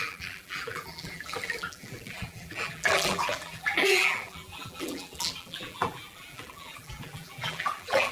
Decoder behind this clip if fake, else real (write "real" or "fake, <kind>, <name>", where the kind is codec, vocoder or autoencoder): fake, vocoder, BigVGAN v2